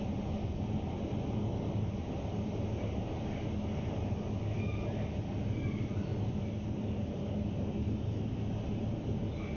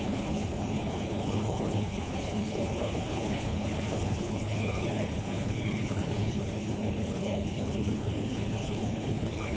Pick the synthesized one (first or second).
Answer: second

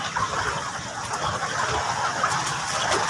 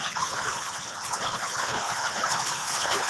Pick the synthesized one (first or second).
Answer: second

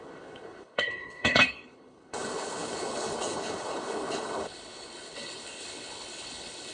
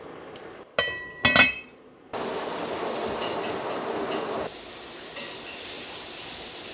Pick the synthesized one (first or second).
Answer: first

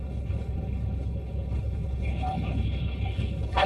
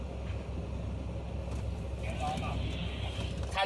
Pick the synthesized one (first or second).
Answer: first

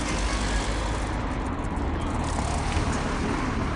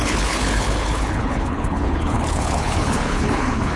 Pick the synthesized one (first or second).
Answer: second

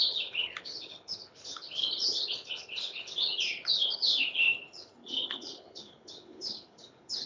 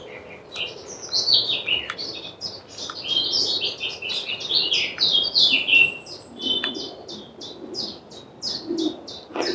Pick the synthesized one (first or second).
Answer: first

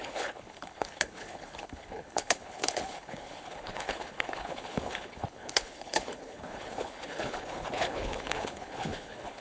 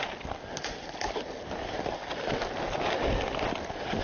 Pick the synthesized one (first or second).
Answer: first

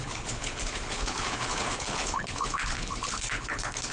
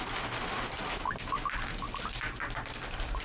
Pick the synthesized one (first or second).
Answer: first